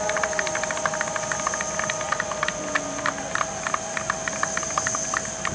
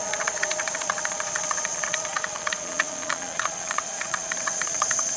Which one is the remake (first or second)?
second